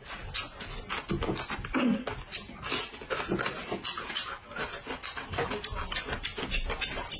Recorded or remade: recorded